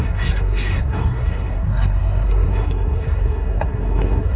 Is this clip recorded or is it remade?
remade